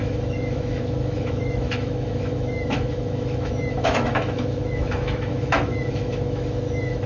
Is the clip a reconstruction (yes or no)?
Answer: yes